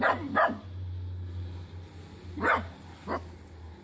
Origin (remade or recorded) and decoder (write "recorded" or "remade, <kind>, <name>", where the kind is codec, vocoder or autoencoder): recorded